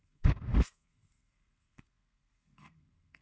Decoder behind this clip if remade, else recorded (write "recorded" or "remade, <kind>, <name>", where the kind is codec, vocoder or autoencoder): remade, codec, SNAC